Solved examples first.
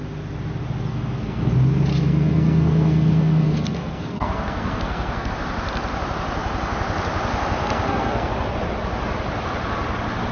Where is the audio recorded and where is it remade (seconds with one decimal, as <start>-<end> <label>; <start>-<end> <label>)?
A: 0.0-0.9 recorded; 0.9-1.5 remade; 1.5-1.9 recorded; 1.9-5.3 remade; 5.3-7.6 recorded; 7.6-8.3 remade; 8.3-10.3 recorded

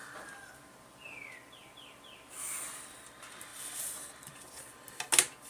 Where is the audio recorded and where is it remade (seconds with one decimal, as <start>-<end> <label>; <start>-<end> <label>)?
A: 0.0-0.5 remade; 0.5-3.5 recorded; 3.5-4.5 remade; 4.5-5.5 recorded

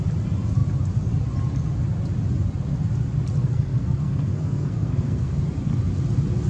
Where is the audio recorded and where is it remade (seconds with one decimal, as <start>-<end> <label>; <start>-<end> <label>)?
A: 0.0-3.4 recorded; 3.4-5.4 remade; 5.4-6.5 recorded